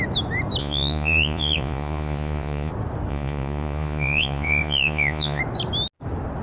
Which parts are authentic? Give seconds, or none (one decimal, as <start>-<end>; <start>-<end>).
0.0-0.6; 2.7-3.1; 5.4-6.4